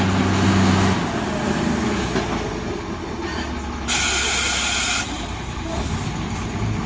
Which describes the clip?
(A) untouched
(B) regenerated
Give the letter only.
A